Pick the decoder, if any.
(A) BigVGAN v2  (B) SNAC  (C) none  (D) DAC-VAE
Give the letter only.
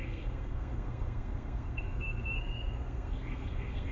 B